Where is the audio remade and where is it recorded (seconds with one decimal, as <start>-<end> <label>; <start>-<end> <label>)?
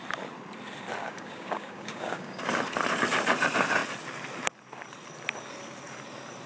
0.0-1.0 recorded; 1.0-2.4 remade; 2.4-6.5 recorded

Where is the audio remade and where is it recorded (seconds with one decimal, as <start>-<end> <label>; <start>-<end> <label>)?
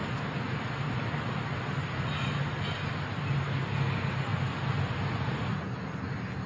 0.0-6.5 recorded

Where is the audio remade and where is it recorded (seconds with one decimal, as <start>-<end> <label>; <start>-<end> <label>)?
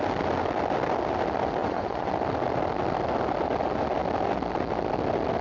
0.0-1.6 recorded; 1.6-2.1 remade; 2.1-5.4 recorded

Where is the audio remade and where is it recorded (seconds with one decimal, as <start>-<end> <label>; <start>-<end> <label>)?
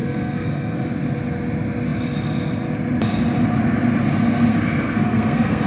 0.0-0.9 remade; 0.9-4.5 recorded; 4.5-5.7 remade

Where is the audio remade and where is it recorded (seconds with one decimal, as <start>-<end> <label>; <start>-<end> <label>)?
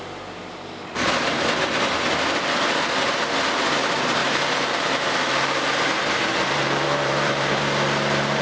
0.0-4.2 recorded; 4.2-7.6 remade; 7.6-8.4 recorded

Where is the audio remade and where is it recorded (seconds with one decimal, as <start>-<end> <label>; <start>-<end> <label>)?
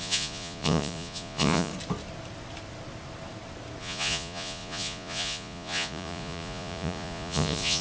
0.0-1.7 remade; 1.7-3.8 recorded; 3.8-7.8 remade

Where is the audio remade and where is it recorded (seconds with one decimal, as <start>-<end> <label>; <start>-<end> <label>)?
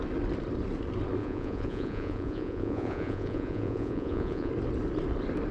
0.0-1.2 recorded; 1.2-4.5 remade; 4.5-5.5 recorded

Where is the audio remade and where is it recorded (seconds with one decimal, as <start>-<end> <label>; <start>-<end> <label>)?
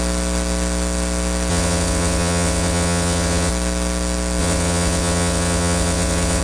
0.0-1.5 recorded; 1.5-3.5 remade; 3.5-4.4 recorded; 4.4-6.4 remade